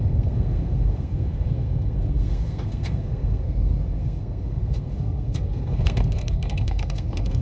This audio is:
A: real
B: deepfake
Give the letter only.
B